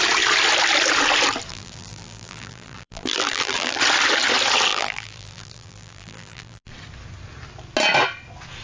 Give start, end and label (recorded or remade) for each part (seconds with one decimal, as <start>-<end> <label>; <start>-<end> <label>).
0.0-1.5 recorded; 1.5-3.8 remade; 3.8-4.7 recorded; 4.7-6.7 remade; 6.7-8.6 recorded